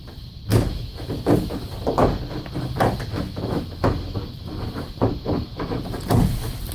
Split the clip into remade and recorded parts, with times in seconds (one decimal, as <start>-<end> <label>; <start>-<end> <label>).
0.0-0.5 recorded; 0.5-1.1 remade; 1.1-3.1 recorded; 3.1-5.8 remade; 5.8-6.7 recorded